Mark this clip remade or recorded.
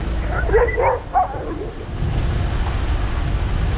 recorded